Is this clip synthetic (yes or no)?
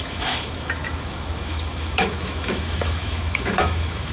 yes